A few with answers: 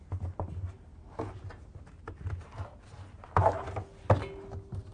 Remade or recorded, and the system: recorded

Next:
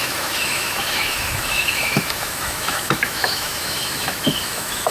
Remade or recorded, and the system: remade, autoencoder, DAC-VAE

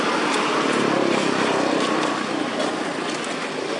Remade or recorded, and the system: recorded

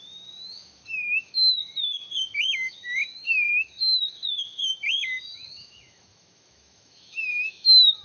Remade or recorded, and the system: remade, autoencoder, DAC-VAE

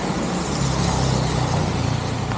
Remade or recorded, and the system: recorded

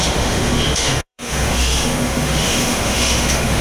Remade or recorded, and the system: remade, autoencoder, DAC-VAE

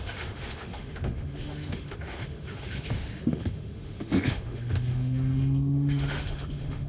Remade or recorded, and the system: remade, autoencoder, DAC-VAE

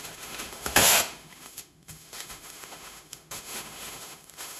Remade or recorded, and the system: remade, autoencoder, DAC-VAE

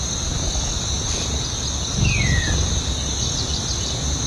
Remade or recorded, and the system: recorded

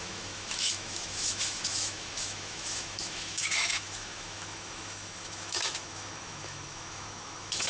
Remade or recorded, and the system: remade, autoencoder, DAC-VAE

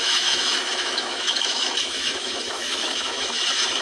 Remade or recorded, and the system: remade, autoencoder, DAC-VAE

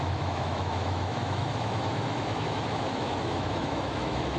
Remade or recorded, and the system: remade, autoencoder, DAC-VAE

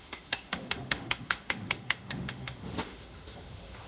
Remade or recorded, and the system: remade, autoencoder, DAC-VAE